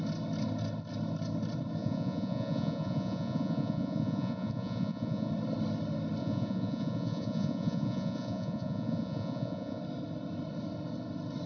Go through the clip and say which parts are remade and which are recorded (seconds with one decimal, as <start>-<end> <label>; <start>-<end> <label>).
0.0-1.8 recorded; 1.8-5.3 remade; 5.3-6.2 recorded; 6.2-9.8 remade; 9.8-11.5 recorded